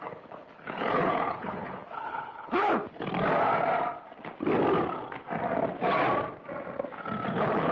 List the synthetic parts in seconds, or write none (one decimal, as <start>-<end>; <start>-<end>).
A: 0.0-2.7; 7.3-7.7